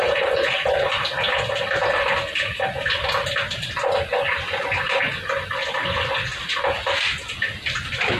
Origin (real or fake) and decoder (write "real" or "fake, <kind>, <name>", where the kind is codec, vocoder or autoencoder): real